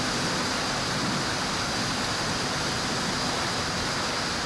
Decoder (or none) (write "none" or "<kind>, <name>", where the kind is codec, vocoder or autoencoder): vocoder, BigVGAN v2